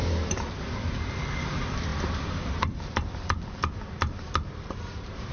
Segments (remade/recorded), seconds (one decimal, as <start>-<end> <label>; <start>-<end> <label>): 0.0-0.6 remade; 0.6-1.9 recorded; 1.9-5.3 remade